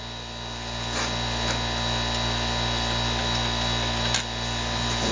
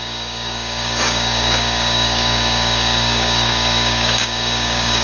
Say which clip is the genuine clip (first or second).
first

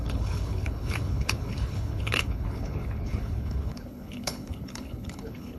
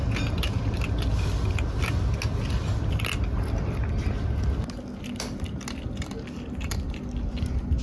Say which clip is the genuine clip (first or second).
second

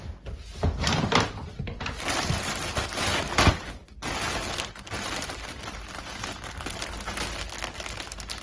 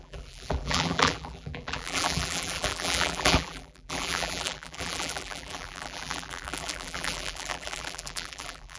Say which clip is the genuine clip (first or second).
first